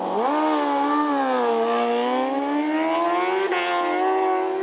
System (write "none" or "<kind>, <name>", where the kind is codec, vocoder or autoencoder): none